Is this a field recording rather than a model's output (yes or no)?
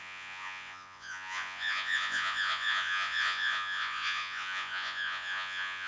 no